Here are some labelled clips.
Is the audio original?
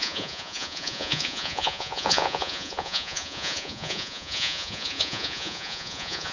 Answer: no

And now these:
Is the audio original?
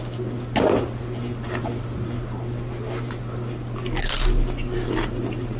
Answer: yes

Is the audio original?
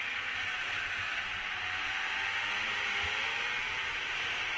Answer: yes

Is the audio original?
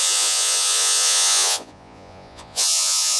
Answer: no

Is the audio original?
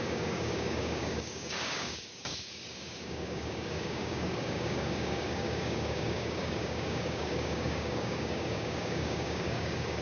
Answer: no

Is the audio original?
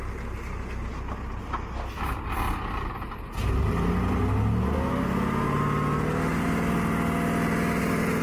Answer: yes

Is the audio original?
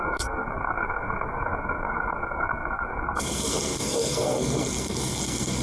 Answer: no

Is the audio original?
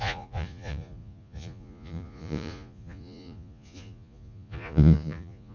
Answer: no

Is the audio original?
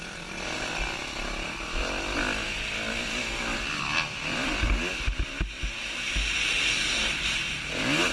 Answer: yes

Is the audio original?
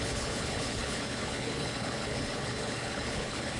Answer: no